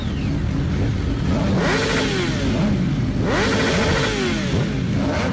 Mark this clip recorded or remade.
recorded